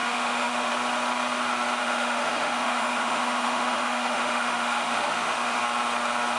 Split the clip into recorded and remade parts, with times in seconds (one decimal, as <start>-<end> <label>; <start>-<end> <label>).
0.0-0.7 remade; 0.7-1.8 recorded; 1.8-5.6 remade; 5.6-6.4 recorded